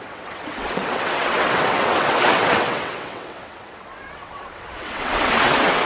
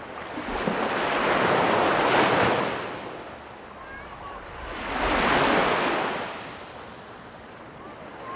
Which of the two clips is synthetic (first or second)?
first